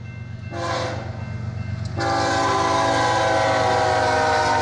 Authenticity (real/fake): real